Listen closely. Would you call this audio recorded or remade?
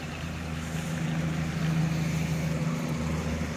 recorded